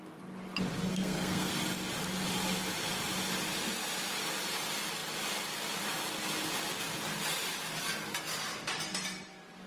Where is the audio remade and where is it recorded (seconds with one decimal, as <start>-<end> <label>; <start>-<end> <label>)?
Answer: 0.0-0.9 recorded; 0.9-1.5 remade; 1.5-9.7 recorded